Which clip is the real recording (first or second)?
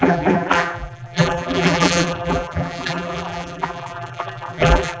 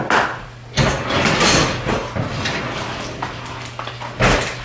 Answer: second